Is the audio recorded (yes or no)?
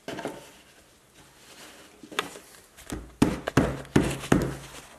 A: yes